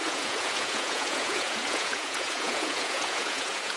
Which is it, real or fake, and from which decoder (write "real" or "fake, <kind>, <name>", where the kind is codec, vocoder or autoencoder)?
fake, vocoder, Vocos